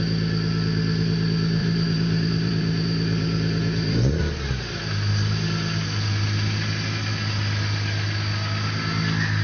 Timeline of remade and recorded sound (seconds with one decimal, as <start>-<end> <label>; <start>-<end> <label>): 0.0-1.6 recorded; 1.6-4.2 remade; 4.2-9.4 recorded